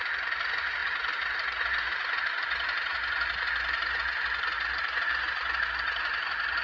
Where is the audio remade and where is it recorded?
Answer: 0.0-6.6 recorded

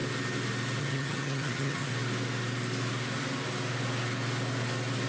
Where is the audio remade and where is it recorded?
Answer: 0.0-0.8 recorded; 0.8-1.9 remade; 1.9-5.1 recorded